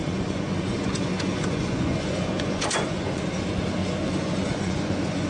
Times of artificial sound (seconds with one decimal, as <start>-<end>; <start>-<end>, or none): 0.0-3.2; 3.8-5.3